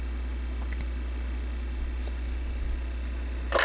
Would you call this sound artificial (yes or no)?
no